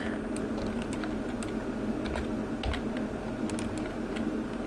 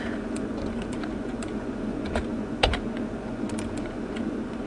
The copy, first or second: second